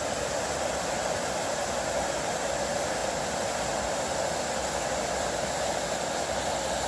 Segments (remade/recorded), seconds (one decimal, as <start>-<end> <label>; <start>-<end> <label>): 0.0-6.9 recorded